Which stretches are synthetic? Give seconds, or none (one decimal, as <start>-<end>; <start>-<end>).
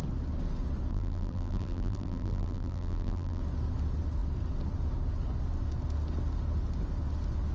0.9-3.4